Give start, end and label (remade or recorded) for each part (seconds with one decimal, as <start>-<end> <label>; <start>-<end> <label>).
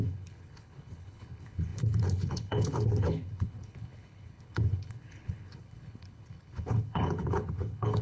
0.0-8.0 remade